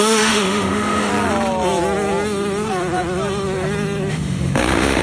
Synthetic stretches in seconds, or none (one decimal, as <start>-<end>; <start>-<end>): 0.0-1.1; 4.1-5.0